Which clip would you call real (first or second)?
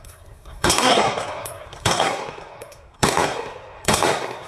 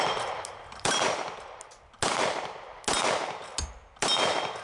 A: second